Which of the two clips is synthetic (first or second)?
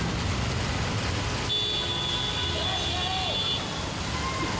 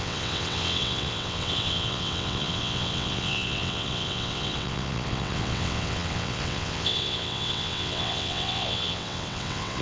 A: second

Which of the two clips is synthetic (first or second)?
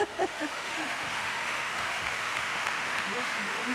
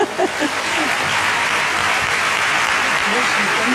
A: first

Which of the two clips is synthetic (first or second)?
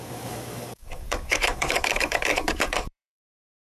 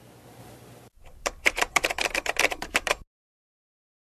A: first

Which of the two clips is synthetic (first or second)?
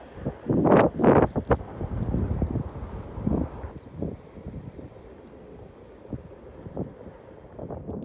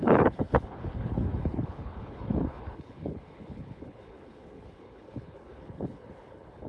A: second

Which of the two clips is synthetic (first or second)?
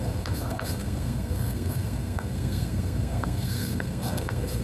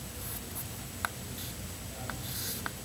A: first